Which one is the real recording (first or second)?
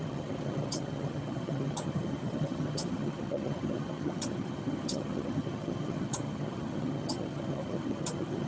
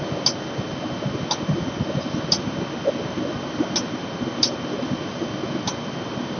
second